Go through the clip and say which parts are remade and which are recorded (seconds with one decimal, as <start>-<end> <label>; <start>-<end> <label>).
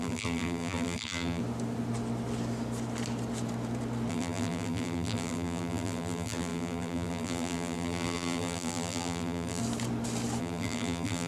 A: 0.0-1.4 remade; 1.4-4.1 recorded; 4.1-9.6 remade; 9.6-10.4 recorded; 10.4-11.3 remade